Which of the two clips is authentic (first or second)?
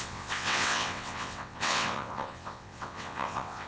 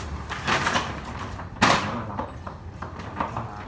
second